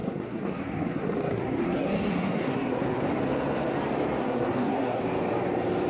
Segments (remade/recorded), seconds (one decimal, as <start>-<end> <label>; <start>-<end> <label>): 0.0-3.1 remade; 3.1-4.2 recorded; 4.2-5.0 remade; 5.0-5.9 recorded